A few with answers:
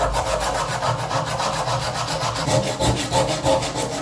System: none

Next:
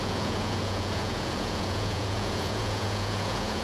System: vocoder, Vocos